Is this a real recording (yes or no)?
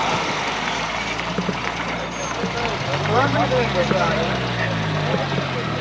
yes